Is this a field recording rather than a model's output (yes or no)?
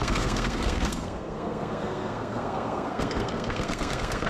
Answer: no